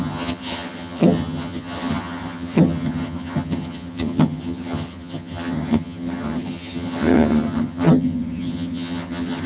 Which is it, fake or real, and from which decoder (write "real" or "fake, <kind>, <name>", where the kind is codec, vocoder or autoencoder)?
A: fake, vocoder, HiFi-GAN